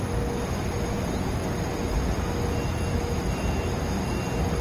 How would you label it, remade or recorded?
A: recorded